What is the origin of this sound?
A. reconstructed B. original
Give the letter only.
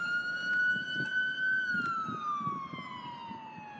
B